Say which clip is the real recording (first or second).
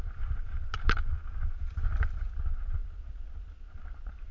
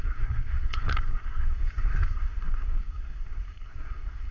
first